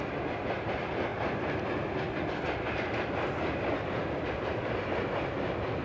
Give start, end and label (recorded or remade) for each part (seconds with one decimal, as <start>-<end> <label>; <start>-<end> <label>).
0.0-5.8 recorded